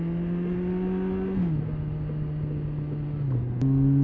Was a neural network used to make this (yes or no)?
no